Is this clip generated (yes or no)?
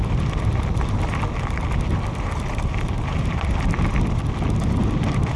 no